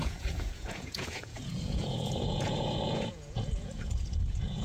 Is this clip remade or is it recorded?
remade